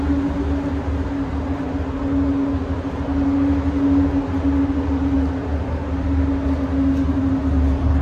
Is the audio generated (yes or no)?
no